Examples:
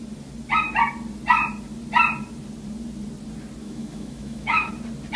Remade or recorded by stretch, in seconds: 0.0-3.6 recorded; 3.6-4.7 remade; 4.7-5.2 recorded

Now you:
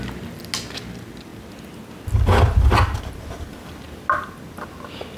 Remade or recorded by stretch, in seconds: 0.0-5.2 recorded

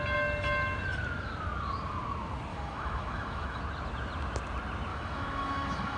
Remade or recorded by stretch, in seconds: 0.0-2.5 recorded; 2.5-3.6 remade; 3.6-4.9 recorded; 4.9-6.0 remade

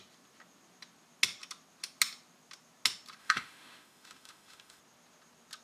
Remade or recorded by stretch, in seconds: 0.0-3.2 recorded; 3.2-4.8 remade; 4.8-5.6 recorded